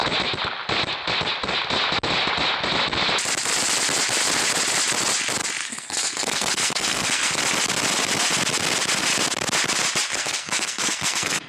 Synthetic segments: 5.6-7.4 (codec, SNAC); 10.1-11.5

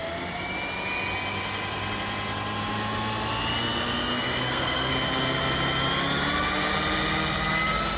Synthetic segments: 4.4-4.9 (codec, SNAC)

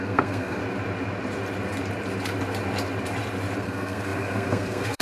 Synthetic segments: 0.0-0.6 (codec, SNAC); 3.6-5.0

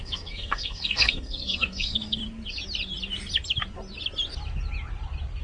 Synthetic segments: 0.0-2.2 (codec, SNAC)

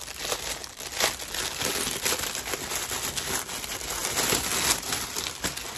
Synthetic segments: none